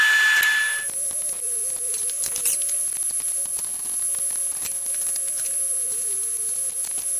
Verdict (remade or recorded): recorded